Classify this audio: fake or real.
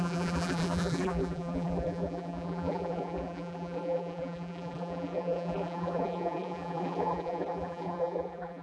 fake